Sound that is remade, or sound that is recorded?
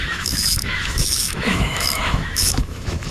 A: remade